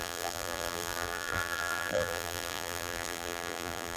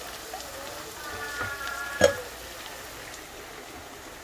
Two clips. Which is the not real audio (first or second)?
first